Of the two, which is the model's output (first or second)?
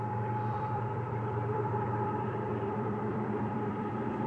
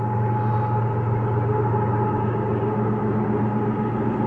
first